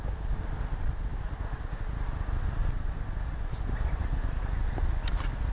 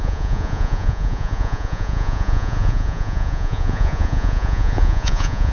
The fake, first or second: second